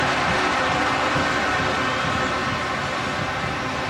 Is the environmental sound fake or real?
real